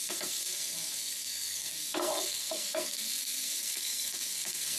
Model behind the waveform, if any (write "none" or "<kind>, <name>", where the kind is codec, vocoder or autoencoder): codec, SNAC